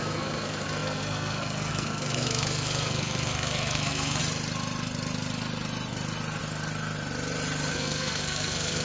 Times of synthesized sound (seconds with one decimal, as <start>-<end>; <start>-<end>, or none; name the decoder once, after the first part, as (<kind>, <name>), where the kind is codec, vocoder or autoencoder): 0.0-4.2 (codec, SNAC); 7.7-8.8